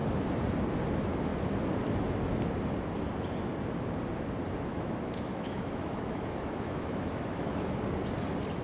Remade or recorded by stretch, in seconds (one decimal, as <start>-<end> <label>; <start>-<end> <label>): 0.0-4.7 recorded; 4.7-7.8 remade; 7.8-8.6 recorded

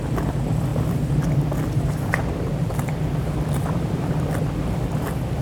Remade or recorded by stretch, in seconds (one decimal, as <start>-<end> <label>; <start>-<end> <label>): 0.0-2.2 recorded; 2.2-4.9 remade; 4.9-5.4 recorded